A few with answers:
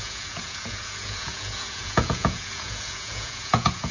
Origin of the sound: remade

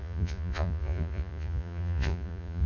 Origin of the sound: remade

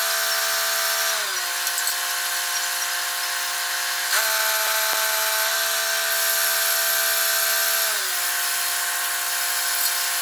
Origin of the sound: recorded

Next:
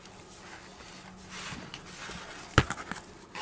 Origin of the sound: recorded